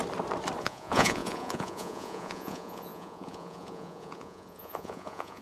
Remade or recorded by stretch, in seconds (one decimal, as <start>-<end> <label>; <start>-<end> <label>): 0.0-0.6 recorded; 0.6-5.4 remade